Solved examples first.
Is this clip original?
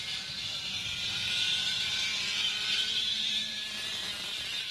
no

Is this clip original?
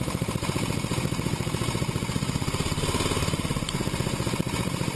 no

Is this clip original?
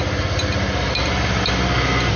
yes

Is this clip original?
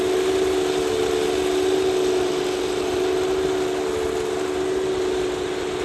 yes